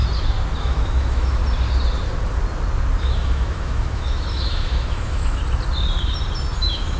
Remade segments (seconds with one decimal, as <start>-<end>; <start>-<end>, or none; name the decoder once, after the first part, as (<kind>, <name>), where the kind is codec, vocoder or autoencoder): 0.6-1.4 (autoencoder, DAC-VAE); 3.0-5.4; 6.6-7.0